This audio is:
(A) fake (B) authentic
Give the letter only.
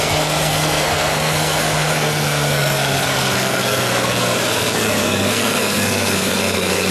A